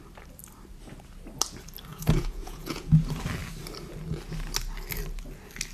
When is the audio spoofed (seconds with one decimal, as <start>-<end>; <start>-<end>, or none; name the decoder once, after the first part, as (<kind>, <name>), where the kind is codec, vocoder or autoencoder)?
1.9-2.9 (vocoder, Vocos)